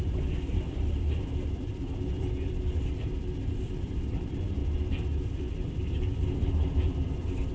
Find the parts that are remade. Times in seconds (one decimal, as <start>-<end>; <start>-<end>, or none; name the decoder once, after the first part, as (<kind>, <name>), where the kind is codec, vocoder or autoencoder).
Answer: 0.0-4.6 (vocoder, BigVGAN v2); 5.2-7.5